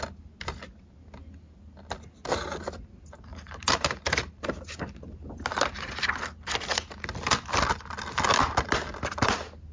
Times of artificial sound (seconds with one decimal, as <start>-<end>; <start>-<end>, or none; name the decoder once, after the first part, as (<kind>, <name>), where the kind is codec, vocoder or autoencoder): 3.3-4.5 (vocoder, BigVGAN v2)